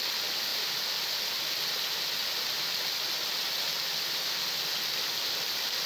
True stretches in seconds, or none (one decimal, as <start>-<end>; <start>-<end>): 0.0-5.9